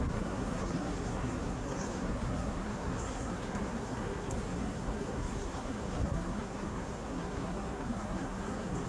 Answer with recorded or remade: remade